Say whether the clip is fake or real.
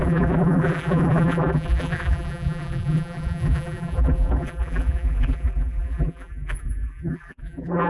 fake